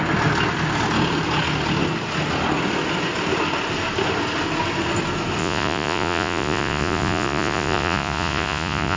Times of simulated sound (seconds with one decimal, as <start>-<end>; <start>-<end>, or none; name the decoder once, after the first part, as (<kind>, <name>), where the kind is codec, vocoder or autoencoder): 5.4-9.0 (vocoder, Vocos)